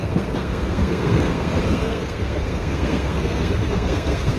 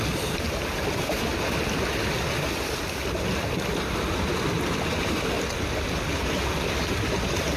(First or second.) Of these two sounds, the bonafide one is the second